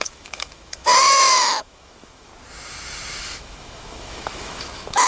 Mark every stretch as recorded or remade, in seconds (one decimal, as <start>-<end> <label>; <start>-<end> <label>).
0.0-2.3 remade; 2.3-3.2 recorded; 3.2-5.1 remade